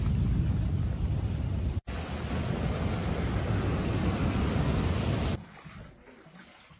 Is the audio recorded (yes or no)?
yes